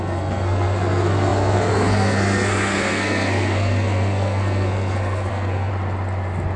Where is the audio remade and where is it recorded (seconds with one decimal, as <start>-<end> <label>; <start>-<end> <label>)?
0.0-5.7 remade; 5.7-6.6 recorded